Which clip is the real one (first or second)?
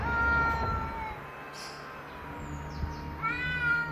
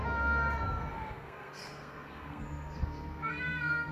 first